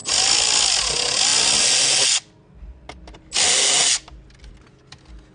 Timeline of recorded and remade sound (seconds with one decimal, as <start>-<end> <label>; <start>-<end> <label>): 0.0-0.9 remade; 0.9-5.3 recorded